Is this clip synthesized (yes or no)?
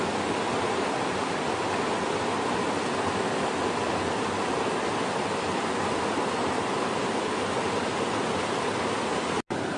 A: no